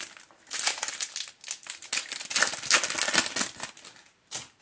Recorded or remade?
recorded